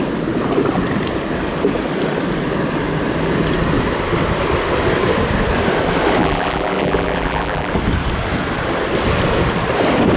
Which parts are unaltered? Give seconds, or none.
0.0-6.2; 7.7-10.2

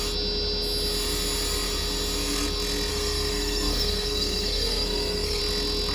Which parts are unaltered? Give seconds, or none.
0.0-2.9; 5.4-5.9

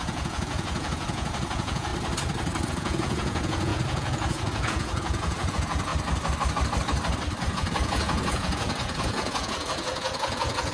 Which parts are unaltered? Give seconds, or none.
1.9-2.7; 5.9-7.5

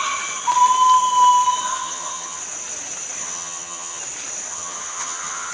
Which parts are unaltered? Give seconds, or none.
0.0-1.7; 2.4-3.2; 4.0-4.5

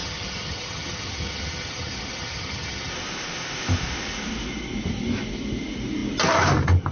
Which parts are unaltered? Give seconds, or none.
2.9-6.9

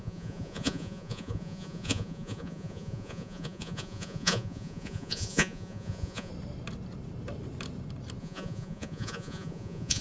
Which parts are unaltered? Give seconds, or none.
6.3-8.2

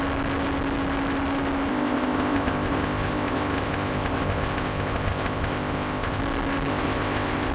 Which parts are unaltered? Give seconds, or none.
0.0-1.7; 6.2-6.7

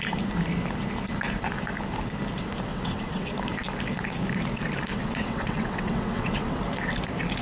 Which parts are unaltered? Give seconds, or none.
0.0-2.7; 3.3-4.9; 6.6-7.4